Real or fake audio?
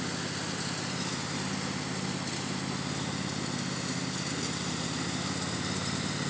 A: real